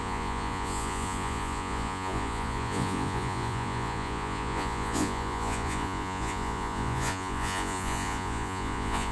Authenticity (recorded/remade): remade